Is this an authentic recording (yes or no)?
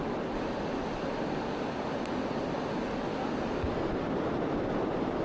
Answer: yes